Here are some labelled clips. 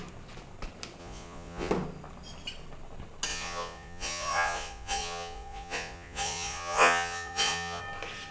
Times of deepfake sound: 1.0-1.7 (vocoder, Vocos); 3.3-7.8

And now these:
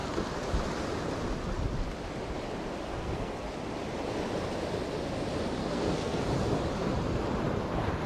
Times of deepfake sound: 2.9-3.5 (codec, SNAC); 5.6-6.2

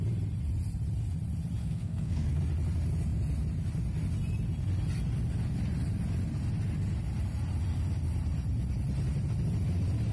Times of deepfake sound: 1.6-2.4 (codec, SNAC)

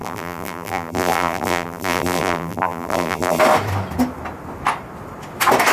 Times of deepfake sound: 0.0-3.4 (vocoder, BigVGAN v2)

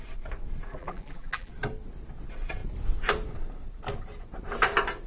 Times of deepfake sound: 0.7-1.5 (vocoder, BigVGAN v2)

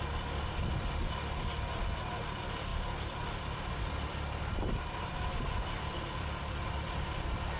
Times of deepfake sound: 0.0-0.6 (vocoder, BigVGAN v2); 2.1-7.6